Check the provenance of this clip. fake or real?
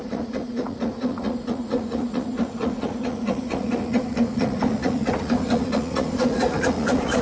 fake